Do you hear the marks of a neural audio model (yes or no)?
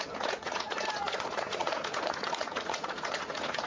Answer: yes